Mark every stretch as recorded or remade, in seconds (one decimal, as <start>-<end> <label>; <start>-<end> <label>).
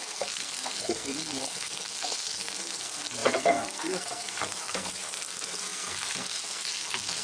0.0-7.2 remade